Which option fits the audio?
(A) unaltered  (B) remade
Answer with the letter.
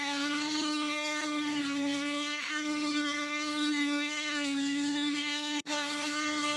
B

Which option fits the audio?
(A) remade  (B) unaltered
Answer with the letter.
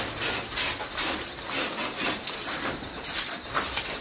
B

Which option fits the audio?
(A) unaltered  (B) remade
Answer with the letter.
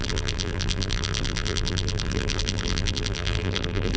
B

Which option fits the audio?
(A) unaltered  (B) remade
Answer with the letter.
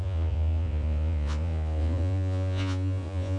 B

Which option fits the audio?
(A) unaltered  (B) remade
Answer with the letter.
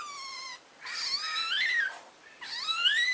B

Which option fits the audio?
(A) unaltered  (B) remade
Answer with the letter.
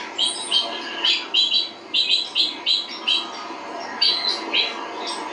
A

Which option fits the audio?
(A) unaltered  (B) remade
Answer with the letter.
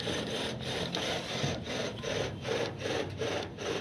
B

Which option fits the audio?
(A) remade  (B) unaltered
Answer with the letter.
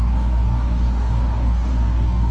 A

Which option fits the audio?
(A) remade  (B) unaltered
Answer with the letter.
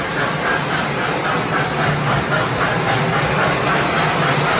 B